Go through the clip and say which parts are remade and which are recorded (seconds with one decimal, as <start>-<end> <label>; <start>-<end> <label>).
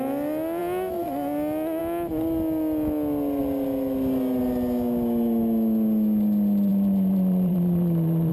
0.0-6.7 recorded; 6.7-8.3 remade